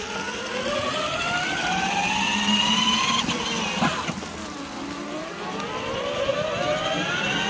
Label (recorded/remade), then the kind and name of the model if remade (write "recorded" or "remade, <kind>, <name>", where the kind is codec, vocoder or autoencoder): recorded